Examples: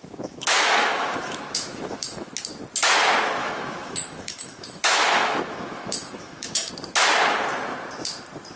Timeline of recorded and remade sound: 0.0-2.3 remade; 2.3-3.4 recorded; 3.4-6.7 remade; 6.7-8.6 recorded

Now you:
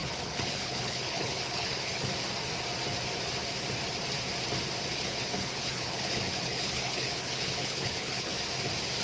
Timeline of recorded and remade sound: 0.0-2.1 remade; 2.1-4.9 recorded; 4.9-8.3 remade; 8.3-9.0 recorded

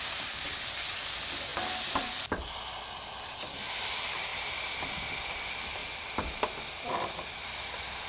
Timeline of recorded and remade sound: 0.0-1.5 remade; 1.5-3.9 recorded; 3.9-4.3 remade; 4.3-4.8 recorded; 4.8-5.8 remade; 5.8-6.7 recorded; 6.7-8.1 remade

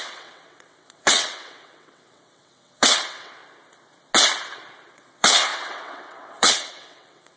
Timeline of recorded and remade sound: 0.0-3.4 remade; 3.4-4.9 recorded; 4.9-7.4 remade

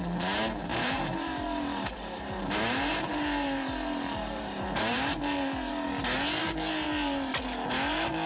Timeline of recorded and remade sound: 0.0-0.7 recorded; 0.7-5.7 remade; 5.7-6.4 recorded; 6.4-7.3 remade; 7.3-8.3 recorded

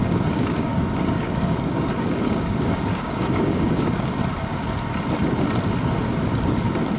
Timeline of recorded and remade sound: 0.0-4.2 remade; 4.2-7.0 recorded

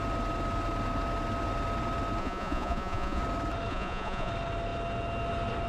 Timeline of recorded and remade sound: 0.0-2.2 recorded; 2.2-3.2 remade; 3.2-3.7 recorded; 3.7-4.3 remade; 4.3-5.7 recorded